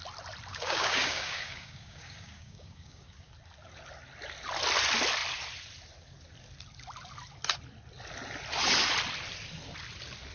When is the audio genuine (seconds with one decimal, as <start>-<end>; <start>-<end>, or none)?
0.0-0.5; 3.3-10.3